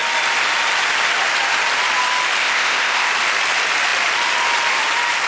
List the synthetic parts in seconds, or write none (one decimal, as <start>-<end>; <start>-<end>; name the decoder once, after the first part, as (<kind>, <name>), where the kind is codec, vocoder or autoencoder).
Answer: 2.4-3.1 (codec, ZipCodec)